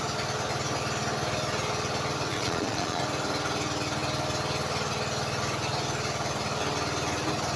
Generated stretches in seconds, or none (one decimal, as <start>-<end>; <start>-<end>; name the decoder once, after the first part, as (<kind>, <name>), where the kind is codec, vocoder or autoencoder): 2.3-3.0 (vocoder, Vocos)